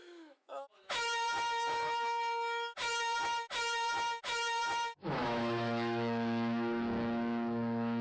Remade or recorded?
remade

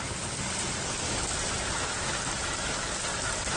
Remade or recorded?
recorded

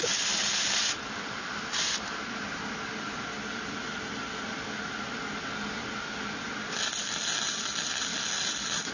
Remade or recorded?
recorded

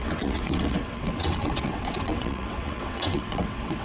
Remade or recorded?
remade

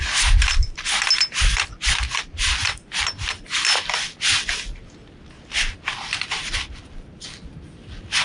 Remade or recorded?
recorded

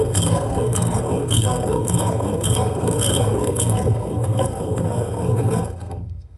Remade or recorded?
remade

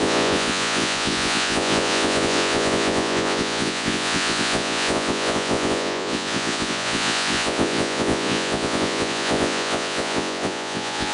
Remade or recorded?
remade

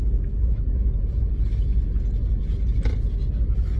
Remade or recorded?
recorded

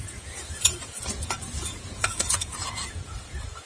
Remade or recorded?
remade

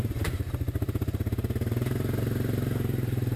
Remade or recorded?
remade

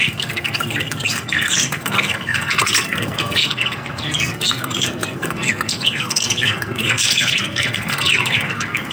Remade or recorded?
remade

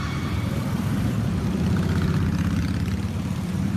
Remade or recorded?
remade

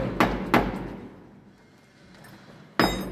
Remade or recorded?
recorded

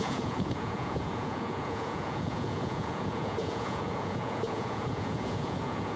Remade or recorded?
remade